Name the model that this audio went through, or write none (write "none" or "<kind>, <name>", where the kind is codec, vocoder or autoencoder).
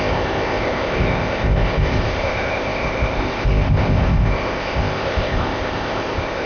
codec, ZipCodec